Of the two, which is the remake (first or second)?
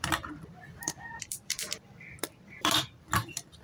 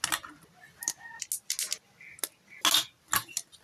first